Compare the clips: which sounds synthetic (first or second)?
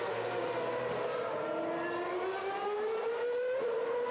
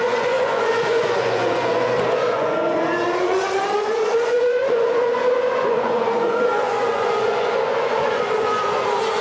second